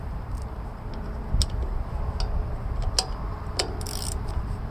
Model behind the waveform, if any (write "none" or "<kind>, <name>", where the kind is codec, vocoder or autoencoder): none